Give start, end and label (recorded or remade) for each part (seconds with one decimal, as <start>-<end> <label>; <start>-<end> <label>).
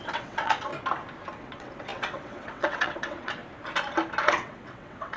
0.0-0.7 remade; 0.7-1.4 recorded; 1.4-3.4 remade; 3.4-4.2 recorded; 4.2-5.2 remade